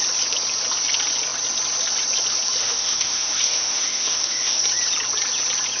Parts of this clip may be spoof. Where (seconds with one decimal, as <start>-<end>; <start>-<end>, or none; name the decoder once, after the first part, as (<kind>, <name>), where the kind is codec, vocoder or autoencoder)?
2.6-4.6 (autoencoder, DAC-VAE)